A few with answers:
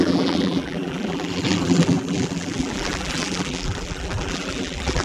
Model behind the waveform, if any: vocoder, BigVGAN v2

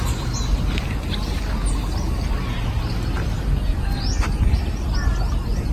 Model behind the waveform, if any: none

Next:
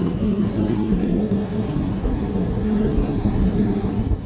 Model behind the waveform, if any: codec, SNAC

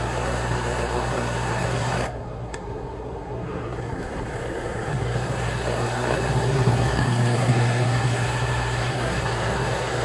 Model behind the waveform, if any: codec, SNAC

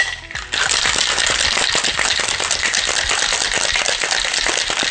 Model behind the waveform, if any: none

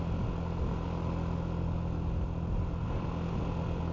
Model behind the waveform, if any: none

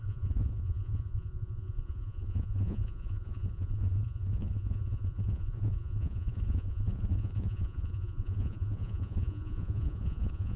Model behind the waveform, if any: vocoder, Vocos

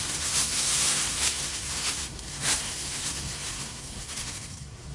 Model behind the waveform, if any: codec, SNAC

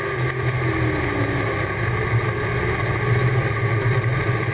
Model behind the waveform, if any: none